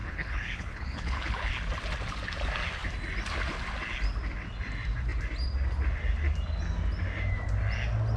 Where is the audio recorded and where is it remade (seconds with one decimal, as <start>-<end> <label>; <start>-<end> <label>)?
0.0-1.5 remade; 1.5-8.2 recorded